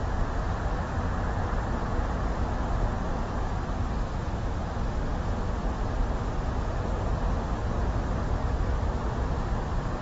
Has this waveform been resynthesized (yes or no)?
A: no